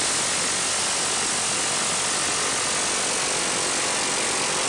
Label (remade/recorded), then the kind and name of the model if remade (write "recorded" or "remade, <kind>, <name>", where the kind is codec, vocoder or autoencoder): recorded